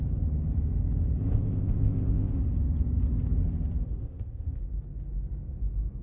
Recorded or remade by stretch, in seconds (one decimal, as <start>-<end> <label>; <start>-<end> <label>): 0.0-1.2 recorded; 1.2-2.4 remade; 2.4-4.0 recorded; 4.0-4.6 remade; 4.6-6.0 recorded